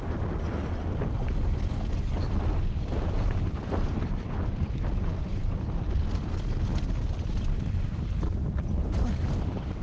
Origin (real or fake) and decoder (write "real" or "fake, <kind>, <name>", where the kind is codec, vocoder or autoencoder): real